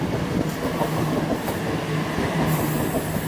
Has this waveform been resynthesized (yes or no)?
no